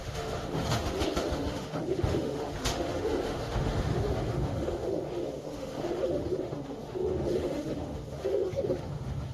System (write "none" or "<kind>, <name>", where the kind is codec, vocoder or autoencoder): autoencoder, DAC-VAE